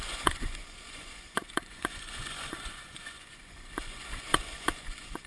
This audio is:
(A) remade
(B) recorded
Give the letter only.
A